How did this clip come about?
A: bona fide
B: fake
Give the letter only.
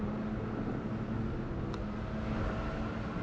A